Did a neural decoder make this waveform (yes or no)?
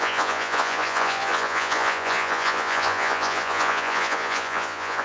yes